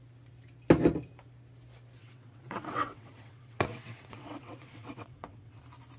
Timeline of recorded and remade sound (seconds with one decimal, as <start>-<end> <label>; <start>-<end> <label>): 0.0-2.0 recorded; 2.0-5.6 remade; 5.6-6.0 recorded